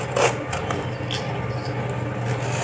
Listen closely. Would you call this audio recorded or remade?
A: recorded